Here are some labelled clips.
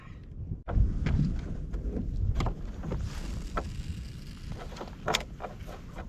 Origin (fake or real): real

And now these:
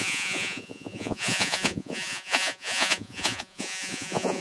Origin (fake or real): fake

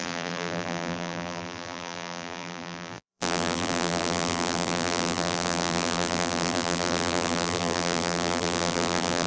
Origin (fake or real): fake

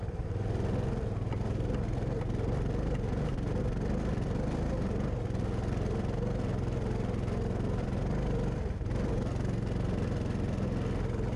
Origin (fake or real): real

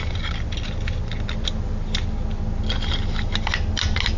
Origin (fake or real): real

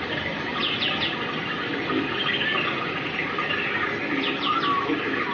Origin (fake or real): real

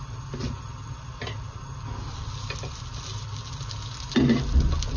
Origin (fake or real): real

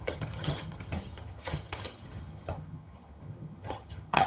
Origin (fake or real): fake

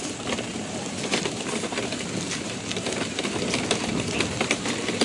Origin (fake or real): fake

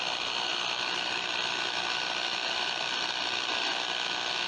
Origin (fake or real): real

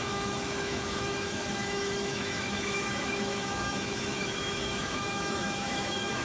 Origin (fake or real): fake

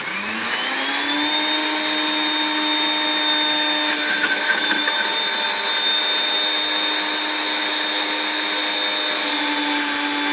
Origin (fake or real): real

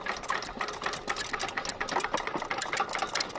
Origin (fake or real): real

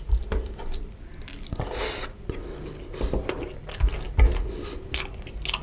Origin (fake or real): real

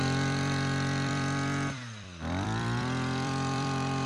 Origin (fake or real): fake